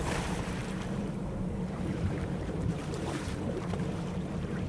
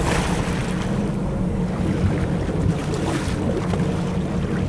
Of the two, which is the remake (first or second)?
first